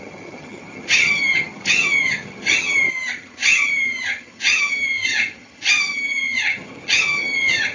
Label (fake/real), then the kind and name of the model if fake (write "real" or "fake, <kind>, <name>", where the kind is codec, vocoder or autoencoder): fake, vocoder, HiFi-GAN